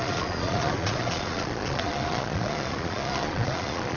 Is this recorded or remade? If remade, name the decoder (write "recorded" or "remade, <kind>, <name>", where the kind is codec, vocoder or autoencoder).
remade, vocoder, Vocos